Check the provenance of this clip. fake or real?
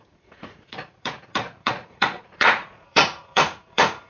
fake